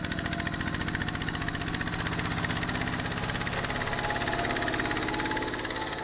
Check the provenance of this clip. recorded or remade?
recorded